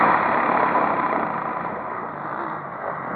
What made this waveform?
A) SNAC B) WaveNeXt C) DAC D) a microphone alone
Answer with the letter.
D